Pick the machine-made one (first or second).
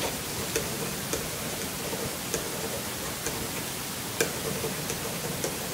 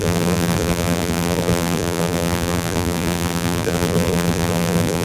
second